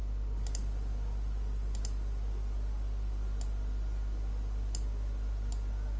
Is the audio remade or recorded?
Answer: recorded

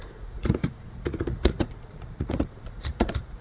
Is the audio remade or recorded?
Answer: remade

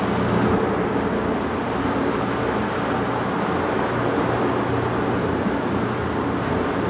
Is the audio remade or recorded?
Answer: recorded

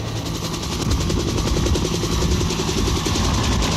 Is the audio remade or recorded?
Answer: recorded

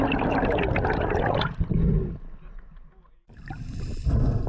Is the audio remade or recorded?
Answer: recorded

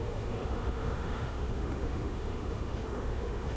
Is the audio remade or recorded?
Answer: remade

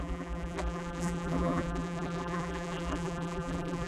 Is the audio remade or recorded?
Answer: remade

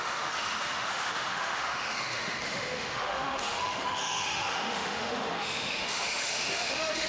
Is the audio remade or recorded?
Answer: remade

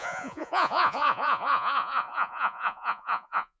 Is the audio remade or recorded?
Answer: remade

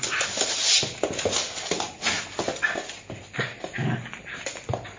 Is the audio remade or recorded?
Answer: recorded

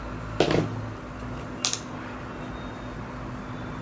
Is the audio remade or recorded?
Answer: recorded